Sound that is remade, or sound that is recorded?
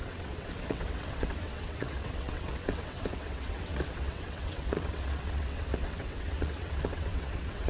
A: remade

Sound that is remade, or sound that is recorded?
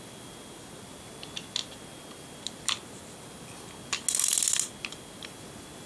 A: recorded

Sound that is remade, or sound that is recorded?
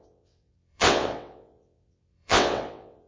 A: remade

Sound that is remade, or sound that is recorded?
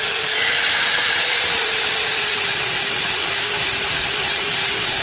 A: recorded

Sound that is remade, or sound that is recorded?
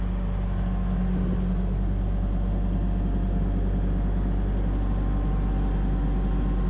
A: recorded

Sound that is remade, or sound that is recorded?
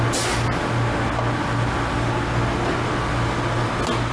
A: recorded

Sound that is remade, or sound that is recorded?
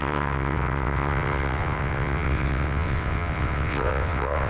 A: remade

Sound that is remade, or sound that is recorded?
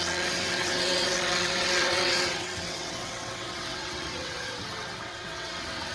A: remade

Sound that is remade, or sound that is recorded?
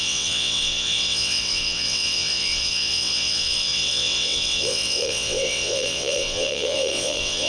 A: remade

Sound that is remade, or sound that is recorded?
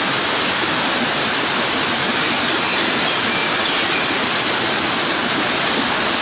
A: recorded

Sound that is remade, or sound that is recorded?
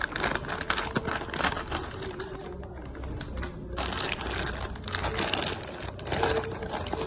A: recorded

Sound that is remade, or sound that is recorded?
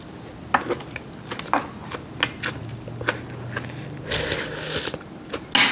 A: recorded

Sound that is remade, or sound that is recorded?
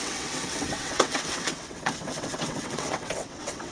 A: remade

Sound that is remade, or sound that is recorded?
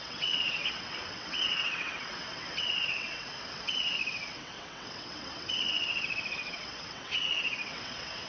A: remade